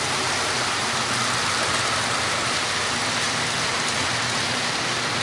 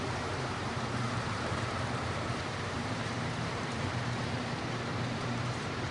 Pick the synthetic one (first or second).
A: second